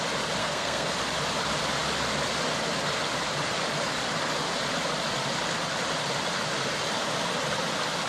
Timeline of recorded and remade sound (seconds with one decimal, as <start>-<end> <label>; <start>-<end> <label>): 0.0-0.4 recorded; 0.4-0.9 remade; 0.9-8.1 recorded